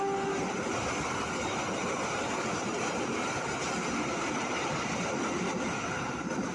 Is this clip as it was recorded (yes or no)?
yes